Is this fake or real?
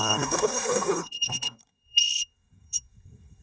fake